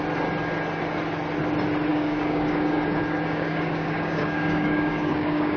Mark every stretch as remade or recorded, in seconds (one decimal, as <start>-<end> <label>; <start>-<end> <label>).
0.0-1.9 recorded; 1.9-5.6 remade